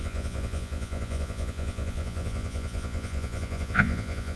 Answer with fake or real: fake